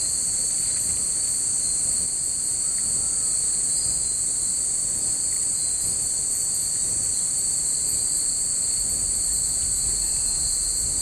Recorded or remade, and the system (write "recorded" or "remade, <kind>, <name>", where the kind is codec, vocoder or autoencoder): recorded